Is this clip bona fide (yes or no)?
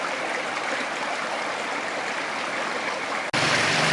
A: yes